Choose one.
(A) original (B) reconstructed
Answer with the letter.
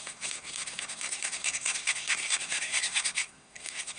B